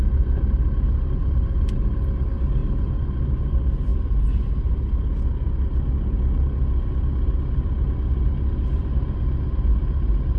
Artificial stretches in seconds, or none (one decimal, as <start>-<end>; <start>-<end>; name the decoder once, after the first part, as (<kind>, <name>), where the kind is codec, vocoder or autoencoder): none